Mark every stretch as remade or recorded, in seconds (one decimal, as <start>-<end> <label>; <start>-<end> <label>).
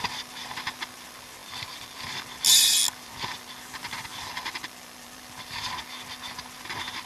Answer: 0.0-1.4 recorded; 1.4-5.7 remade; 5.7-7.1 recorded